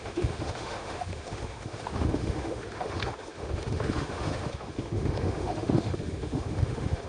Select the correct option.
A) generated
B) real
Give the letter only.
A